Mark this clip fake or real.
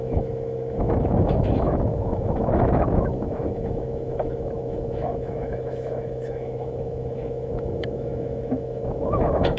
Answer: fake